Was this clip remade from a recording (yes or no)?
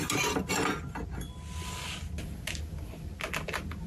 no